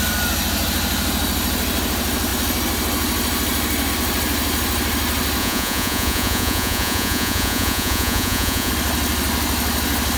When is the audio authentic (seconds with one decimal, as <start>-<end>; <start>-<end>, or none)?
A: 0.0-5.4; 8.7-10.2